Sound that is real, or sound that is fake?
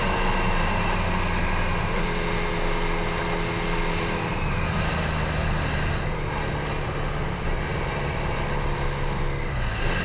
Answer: real